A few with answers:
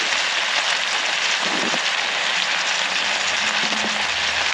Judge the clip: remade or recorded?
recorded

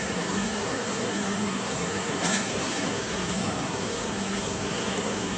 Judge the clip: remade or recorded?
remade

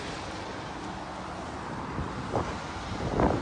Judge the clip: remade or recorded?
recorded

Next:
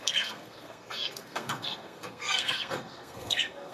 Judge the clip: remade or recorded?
remade